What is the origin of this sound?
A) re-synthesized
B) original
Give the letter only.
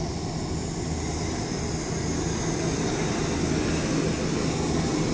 B